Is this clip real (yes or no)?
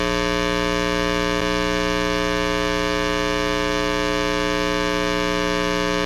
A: yes